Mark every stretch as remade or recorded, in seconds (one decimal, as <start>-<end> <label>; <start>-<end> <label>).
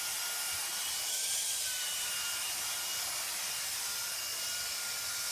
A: 0.0-5.3 recorded